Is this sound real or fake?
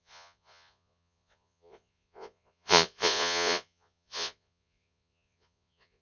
fake